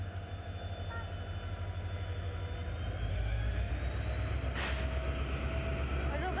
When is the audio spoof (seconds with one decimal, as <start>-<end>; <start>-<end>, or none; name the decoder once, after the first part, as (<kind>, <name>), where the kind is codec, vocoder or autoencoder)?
3.1-3.7 (autoencoder, DAC-VAE)